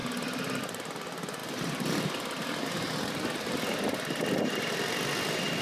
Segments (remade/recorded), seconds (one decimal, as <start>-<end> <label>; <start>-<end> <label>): 0.0-5.6 recorded